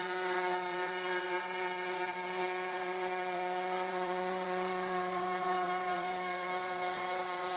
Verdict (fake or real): fake